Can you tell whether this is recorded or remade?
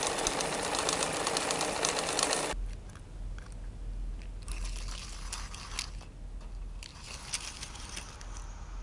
recorded